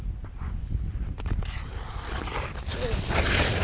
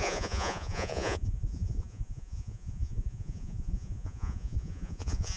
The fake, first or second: second